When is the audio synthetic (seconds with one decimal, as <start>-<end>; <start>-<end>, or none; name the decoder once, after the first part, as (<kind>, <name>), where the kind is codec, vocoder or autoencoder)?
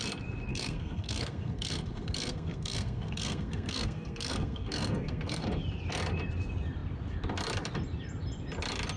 0.5-5.6 (codec, SNAC)